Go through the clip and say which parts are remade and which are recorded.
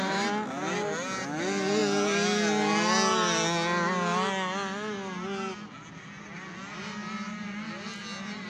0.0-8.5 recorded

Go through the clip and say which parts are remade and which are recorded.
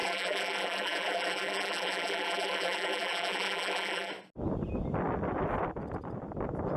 0.0-4.1 remade; 4.1-6.8 recorded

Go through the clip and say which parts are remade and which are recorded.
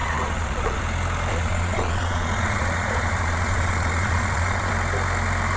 0.0-0.8 remade; 0.8-1.3 recorded; 1.3-4.7 remade; 4.7-5.6 recorded